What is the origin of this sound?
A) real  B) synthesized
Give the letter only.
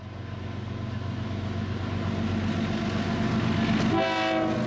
A